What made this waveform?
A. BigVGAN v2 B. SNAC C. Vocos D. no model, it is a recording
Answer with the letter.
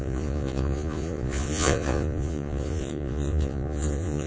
C